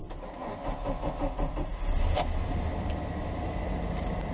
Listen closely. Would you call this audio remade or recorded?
recorded